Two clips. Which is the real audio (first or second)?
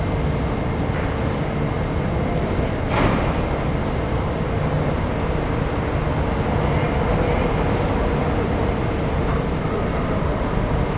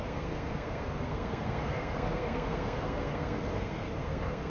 first